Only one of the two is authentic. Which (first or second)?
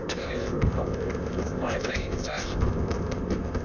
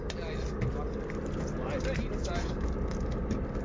second